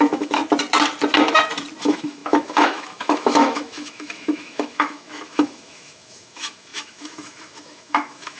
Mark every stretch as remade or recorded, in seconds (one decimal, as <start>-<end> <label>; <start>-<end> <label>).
0.0-0.4 remade; 0.4-1.8 recorded; 1.8-8.4 remade